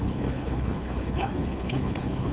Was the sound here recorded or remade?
remade